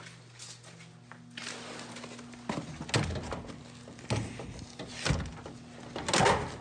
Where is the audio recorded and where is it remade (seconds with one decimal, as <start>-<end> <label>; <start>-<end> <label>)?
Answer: 0.0-6.6 recorded